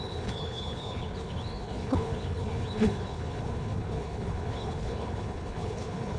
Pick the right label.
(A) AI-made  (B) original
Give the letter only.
A